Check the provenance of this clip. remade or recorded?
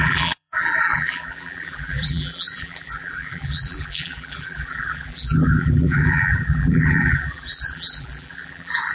remade